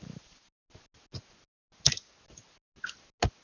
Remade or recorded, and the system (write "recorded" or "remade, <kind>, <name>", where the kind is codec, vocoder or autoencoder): recorded